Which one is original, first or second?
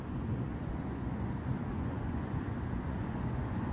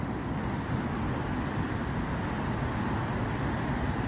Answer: second